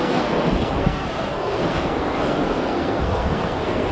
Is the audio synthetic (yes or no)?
yes